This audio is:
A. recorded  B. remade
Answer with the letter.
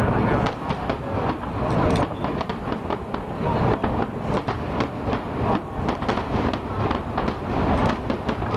A